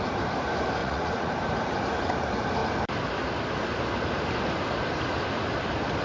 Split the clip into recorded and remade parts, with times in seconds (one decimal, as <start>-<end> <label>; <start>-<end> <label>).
0.0-0.8 recorded; 0.8-1.3 remade; 1.3-6.0 recorded